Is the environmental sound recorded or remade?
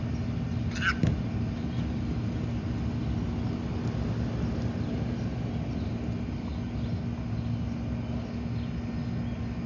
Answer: recorded